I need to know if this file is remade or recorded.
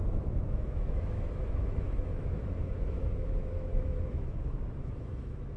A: remade